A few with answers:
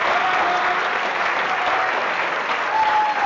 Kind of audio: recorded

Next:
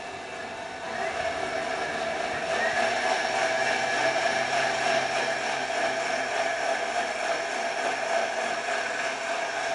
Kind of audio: recorded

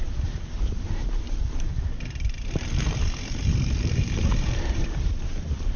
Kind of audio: remade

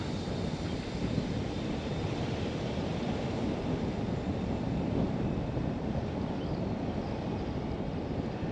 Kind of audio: remade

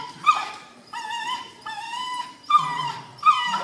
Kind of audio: remade